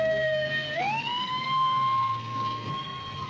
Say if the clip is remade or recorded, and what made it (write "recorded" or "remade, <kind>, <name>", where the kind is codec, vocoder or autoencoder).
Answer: remade, codec, SNAC